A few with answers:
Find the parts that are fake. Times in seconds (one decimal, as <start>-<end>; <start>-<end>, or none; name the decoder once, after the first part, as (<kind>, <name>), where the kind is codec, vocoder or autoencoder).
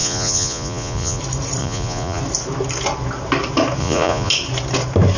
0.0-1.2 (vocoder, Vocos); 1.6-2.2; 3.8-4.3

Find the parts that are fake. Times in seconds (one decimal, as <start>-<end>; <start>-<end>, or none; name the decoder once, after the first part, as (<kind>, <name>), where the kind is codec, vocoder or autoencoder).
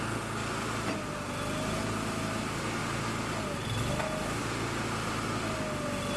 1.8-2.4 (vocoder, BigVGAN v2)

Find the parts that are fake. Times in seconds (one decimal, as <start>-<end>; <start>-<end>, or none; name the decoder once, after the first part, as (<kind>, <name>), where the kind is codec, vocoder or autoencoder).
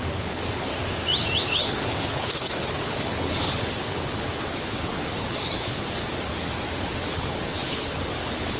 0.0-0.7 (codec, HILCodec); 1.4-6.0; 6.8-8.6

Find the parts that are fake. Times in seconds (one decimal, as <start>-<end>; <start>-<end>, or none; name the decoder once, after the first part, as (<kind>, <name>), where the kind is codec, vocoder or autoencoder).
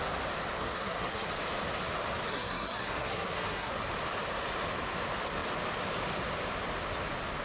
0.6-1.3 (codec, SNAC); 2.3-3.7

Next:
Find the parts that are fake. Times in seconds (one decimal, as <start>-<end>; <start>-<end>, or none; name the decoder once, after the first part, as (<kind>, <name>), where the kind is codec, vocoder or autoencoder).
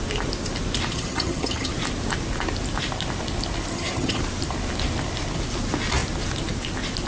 0.9-1.7 (vocoder, HiFi-GAN); 3.7-4.2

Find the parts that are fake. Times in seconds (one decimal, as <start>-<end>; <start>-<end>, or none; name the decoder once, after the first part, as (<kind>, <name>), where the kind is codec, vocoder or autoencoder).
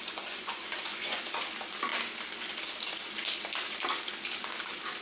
0.0-1.2 (vocoder, Vocos)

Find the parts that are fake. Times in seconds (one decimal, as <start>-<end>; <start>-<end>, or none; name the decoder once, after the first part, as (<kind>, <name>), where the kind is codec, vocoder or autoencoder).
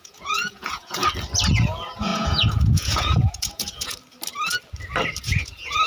0.0-1.0 (vocoder, Vocos); 1.5-3.9; 5.2-5.9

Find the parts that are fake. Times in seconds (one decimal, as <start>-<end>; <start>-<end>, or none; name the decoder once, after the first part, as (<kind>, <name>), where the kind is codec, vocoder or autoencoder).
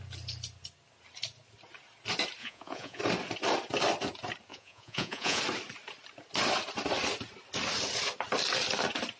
2.4-3.0 (vocoder, Vocos); 4.5-5.4